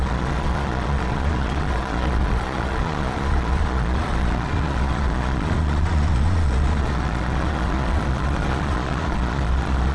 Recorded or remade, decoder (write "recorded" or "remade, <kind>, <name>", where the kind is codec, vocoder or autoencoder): remade, vocoder, Vocos